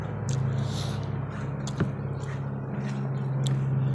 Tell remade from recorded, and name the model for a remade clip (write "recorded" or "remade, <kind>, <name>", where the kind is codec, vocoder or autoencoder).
recorded